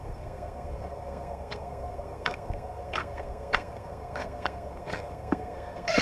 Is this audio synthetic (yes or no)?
yes